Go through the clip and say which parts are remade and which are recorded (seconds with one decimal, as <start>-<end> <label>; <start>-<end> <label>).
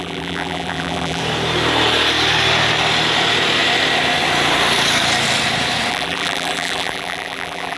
0.0-1.2 remade; 1.2-5.9 recorded; 5.9-7.8 remade